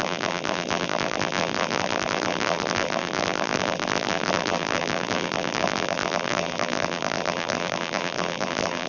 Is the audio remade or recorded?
remade